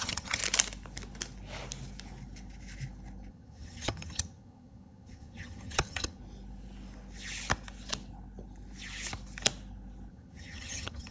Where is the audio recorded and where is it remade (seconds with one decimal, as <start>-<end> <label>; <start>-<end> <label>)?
0.0-0.4 remade; 0.4-3.3 recorded; 3.3-6.2 remade; 6.2-10.1 recorded; 10.1-11.1 remade